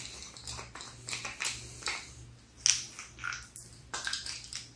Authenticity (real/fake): real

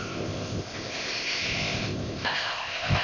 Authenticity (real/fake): fake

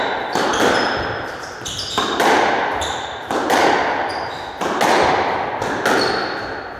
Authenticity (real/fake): real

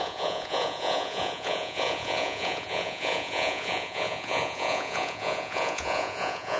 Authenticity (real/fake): fake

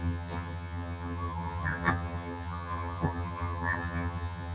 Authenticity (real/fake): fake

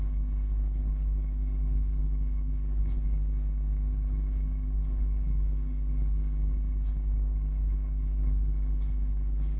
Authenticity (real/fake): fake